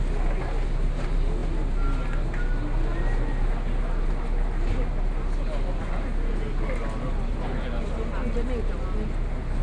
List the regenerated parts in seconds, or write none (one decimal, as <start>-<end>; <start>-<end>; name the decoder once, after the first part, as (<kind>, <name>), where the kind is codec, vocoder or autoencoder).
none